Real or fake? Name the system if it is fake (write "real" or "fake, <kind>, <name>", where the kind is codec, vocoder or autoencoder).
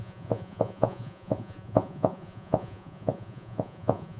fake, vocoder, Vocos